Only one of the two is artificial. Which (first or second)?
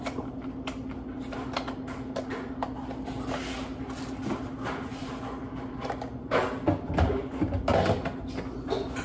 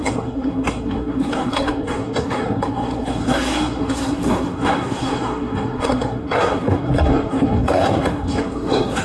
second